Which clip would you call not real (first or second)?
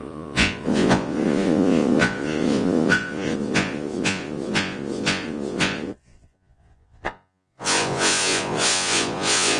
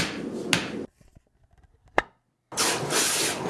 first